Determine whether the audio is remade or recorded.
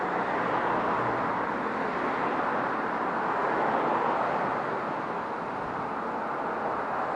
recorded